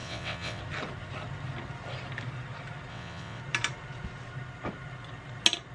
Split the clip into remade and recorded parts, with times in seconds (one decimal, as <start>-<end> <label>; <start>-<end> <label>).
0.0-0.6 remade; 0.6-2.9 recorded; 2.9-3.4 remade; 3.4-5.7 recorded